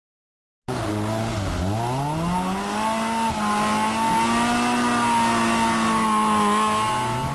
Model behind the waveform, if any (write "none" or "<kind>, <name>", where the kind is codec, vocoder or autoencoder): none